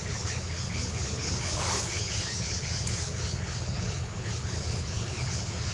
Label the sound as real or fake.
fake